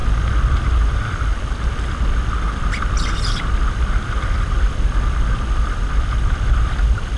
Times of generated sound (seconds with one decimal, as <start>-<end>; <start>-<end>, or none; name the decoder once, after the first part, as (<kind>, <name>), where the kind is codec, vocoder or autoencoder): none